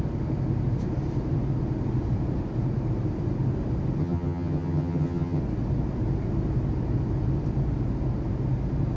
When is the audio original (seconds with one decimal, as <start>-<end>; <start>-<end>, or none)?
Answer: 0.0-4.0; 5.4-9.0